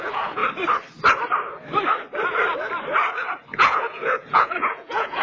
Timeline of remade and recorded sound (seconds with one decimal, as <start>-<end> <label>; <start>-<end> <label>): 0.0-0.4 remade; 0.4-3.5 recorded; 3.5-5.2 remade